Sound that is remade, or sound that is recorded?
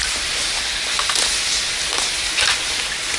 recorded